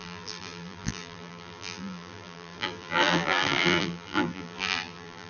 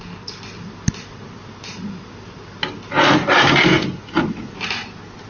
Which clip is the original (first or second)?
second